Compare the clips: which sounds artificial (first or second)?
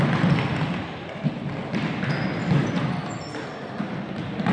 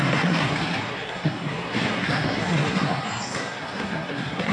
second